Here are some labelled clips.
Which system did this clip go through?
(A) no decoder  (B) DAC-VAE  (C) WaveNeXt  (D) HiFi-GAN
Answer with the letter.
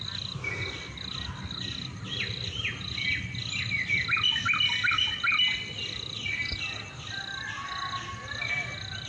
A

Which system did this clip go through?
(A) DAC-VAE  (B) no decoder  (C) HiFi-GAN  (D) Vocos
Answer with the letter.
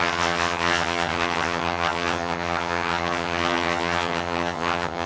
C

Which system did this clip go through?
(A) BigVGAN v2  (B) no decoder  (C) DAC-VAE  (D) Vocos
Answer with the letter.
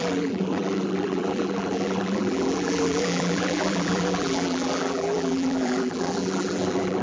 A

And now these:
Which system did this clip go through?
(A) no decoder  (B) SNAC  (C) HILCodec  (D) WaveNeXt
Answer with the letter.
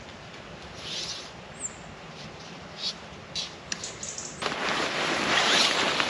A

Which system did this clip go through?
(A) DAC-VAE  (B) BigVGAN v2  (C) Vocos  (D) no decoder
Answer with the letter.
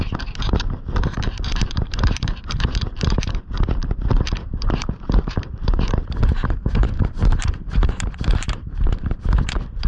B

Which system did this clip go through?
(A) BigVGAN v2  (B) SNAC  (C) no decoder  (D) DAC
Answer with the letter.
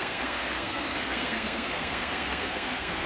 B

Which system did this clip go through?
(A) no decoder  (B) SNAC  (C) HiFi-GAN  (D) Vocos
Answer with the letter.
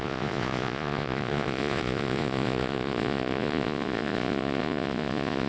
D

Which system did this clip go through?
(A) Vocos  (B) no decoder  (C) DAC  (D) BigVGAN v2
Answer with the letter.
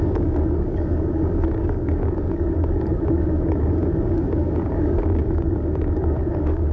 C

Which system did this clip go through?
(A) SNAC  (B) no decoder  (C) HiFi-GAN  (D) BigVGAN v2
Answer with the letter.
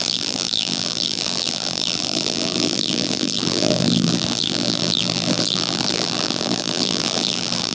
D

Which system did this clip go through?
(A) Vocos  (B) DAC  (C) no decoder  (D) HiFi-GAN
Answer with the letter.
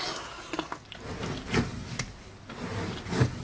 C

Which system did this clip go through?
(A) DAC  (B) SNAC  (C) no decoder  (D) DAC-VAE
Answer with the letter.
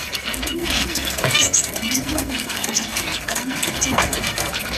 B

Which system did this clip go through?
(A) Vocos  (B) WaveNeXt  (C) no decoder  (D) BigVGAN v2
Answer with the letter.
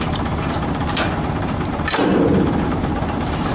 D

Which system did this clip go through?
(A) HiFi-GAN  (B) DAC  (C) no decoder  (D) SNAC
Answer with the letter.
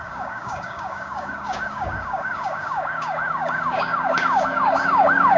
B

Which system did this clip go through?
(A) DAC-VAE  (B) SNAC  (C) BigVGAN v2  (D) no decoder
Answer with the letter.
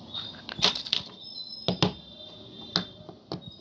D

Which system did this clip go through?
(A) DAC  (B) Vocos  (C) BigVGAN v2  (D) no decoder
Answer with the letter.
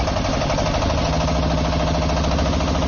D